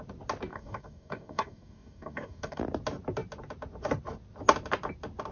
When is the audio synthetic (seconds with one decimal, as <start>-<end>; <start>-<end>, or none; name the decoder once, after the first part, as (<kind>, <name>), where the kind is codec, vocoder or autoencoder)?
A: 0.5-2.6 (codec, DAC)